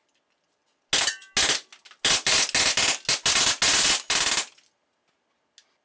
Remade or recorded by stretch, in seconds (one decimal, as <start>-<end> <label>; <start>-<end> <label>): 0.0-5.8 recorded